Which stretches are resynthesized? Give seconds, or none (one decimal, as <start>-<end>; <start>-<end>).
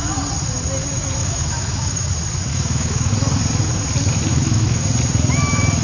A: 1.2-2.1; 2.5-3.1; 4.3-4.8